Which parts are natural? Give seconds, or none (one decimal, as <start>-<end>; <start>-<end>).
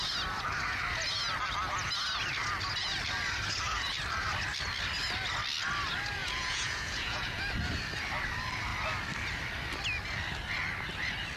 0.0-6.2; 7.4-11.4